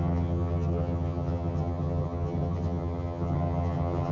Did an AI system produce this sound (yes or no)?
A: yes